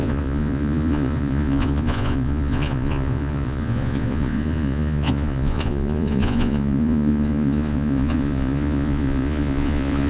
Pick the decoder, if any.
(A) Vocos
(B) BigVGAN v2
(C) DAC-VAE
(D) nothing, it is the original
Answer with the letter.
A